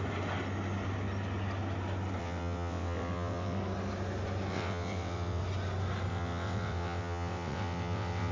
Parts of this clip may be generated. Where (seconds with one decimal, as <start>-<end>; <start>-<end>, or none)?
2.2-3.6; 4.5-5.4; 6.1-8.3